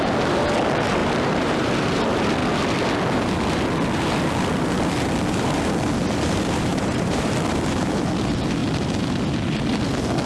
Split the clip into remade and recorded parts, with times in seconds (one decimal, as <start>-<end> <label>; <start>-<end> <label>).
0.0-1.0 recorded; 1.0-1.7 remade; 1.7-6.7 recorded; 6.7-7.3 remade; 7.3-10.3 recorded